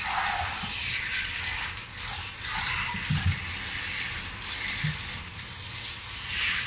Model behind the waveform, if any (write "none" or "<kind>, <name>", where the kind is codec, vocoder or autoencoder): none